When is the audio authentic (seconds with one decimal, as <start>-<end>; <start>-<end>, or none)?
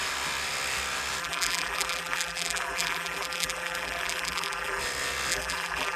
0.0-1.2; 4.8-5.3